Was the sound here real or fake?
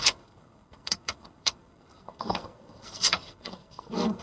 fake